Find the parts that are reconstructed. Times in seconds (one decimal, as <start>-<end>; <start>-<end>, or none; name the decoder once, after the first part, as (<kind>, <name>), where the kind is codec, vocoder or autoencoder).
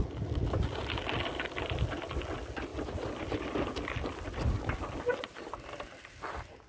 none